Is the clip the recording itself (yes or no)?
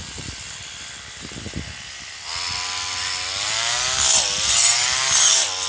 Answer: yes